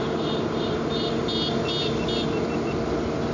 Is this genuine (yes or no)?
yes